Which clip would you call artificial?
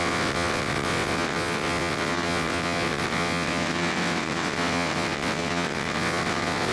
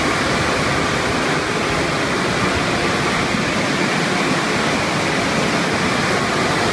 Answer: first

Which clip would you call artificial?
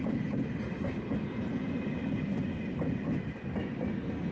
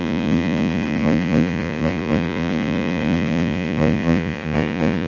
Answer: second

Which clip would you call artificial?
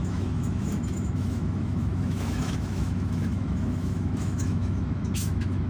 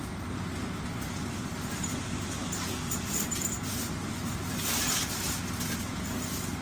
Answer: first